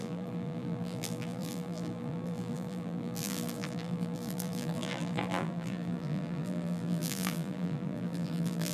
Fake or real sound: fake